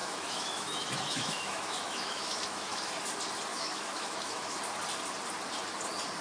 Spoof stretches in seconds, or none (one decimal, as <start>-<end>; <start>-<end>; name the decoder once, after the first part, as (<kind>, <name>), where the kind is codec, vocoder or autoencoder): 0.0-2.9 (autoencoder, DAC-VAE); 3.5-4.6

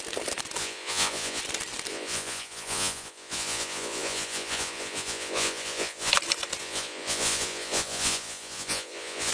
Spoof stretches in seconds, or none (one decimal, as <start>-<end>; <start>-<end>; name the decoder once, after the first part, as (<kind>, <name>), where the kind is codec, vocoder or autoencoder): 0.6-1.4 (vocoder, Vocos); 1.9-6.1; 6.6-9.3

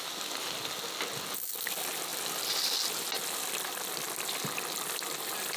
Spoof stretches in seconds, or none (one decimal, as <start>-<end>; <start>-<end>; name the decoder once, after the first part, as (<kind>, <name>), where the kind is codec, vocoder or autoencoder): none

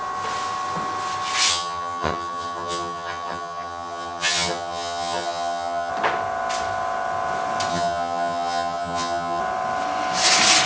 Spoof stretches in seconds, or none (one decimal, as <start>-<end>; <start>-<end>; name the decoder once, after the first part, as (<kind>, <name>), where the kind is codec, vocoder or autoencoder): 1.5-5.9 (vocoder, HiFi-GAN); 7.7-9.4

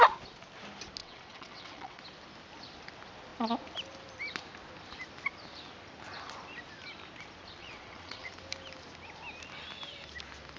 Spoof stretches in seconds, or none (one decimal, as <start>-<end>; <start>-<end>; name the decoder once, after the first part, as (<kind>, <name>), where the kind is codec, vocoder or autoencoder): 1.0-2.0 (vocoder, WaveNeXt); 7.6-8.3

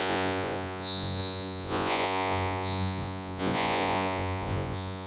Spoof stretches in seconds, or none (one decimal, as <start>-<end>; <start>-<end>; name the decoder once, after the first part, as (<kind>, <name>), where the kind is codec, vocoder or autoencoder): 0.0-5.1 (vocoder, Vocos)